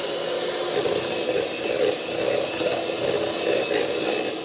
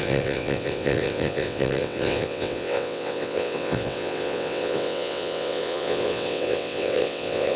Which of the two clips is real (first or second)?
first